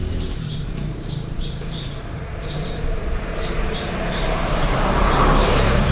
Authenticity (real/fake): fake